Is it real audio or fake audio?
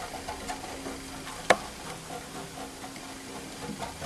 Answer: real